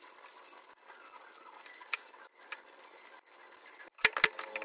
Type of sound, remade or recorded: recorded